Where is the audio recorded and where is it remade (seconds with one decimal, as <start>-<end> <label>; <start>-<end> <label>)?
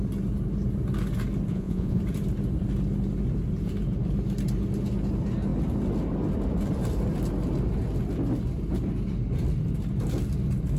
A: 0.0-1.5 recorded; 1.5-2.0 remade; 2.0-10.8 recorded